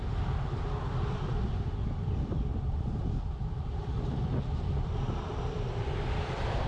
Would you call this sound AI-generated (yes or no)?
yes